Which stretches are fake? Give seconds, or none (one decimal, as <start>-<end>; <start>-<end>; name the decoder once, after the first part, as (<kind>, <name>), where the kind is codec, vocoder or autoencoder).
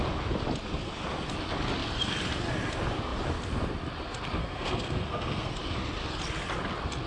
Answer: 4.4-5.5 (codec, SNAC)